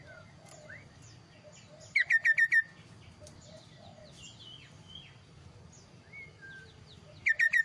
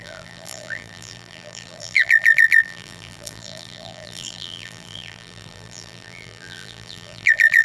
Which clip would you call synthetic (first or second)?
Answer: second